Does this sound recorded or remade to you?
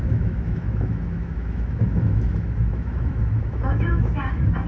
remade